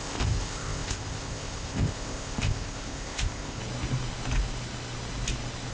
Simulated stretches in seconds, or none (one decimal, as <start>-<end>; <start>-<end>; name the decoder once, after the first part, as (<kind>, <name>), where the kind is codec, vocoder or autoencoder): 0.0-3.6 (codec, ZipCodec)